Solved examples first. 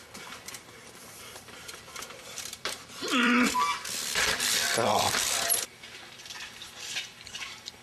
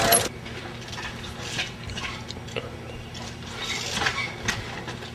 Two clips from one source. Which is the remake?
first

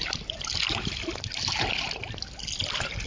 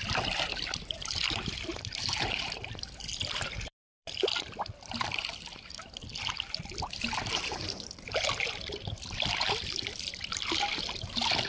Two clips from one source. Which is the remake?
second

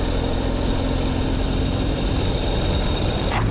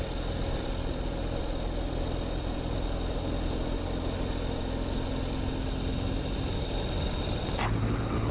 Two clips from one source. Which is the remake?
first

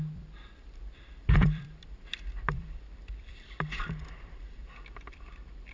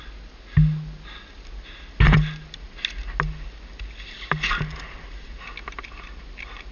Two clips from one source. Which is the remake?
first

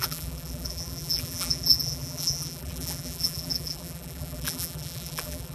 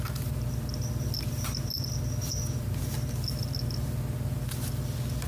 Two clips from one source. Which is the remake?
first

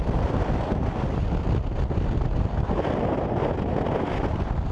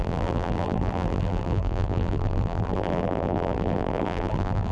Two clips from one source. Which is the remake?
second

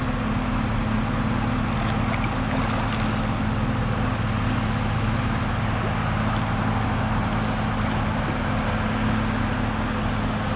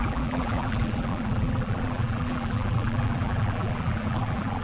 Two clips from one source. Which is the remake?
second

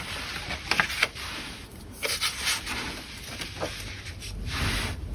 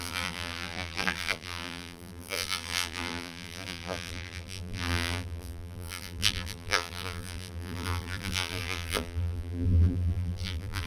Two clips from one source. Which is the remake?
second